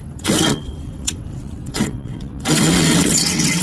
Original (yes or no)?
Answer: no